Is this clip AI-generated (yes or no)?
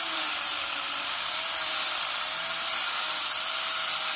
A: no